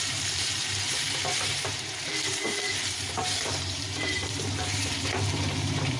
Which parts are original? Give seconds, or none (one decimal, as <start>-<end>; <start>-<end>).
2.1-3.2